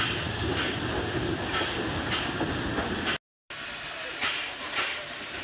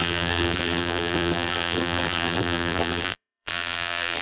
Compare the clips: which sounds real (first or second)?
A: first